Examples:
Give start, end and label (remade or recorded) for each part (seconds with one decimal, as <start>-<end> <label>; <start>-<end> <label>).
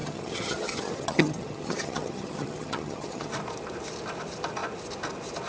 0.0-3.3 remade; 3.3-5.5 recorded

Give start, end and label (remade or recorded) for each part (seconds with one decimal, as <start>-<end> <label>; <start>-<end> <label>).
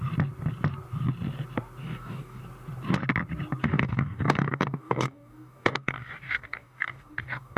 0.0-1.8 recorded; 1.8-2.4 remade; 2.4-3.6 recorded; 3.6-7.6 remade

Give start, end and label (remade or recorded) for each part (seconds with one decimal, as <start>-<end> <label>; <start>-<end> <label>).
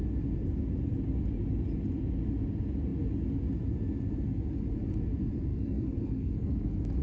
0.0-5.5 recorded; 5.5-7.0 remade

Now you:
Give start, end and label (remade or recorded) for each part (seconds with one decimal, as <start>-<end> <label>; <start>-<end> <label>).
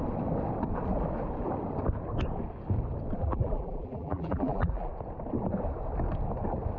0.0-3.2 recorded; 3.2-4.9 remade; 4.9-6.8 recorded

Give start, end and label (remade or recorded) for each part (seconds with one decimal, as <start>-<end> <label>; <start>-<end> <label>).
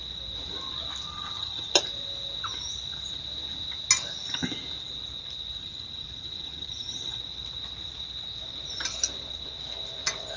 0.0-1.1 recorded; 1.1-1.7 remade; 1.7-5.6 recorded; 5.6-7.2 remade; 7.2-10.4 recorded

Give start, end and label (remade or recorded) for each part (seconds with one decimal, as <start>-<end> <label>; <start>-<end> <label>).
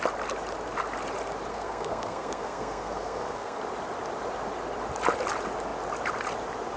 0.0-1.5 recorded; 1.5-3.6 remade; 3.6-6.8 recorded